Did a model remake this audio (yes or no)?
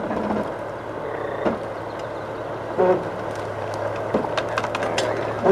no